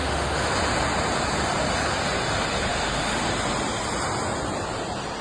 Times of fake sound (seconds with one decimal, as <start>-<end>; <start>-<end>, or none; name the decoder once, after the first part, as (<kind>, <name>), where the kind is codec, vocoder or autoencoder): 0.0-0.5 (autoencoder, DAC-VAE); 2.7-3.3